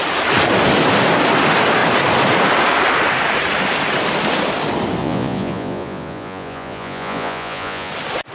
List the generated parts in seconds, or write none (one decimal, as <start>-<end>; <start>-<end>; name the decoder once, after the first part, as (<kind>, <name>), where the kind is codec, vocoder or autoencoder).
5.0-7.9 (vocoder, Vocos)